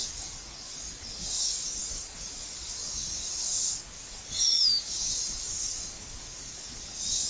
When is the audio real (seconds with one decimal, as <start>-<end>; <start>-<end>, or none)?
none